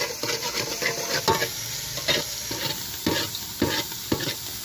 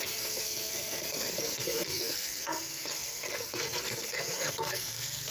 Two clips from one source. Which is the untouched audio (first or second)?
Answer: first